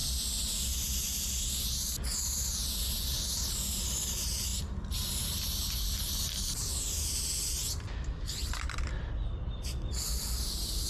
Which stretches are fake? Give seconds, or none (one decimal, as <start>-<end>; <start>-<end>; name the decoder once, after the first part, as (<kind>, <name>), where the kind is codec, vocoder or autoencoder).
none